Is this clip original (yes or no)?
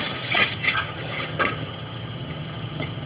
no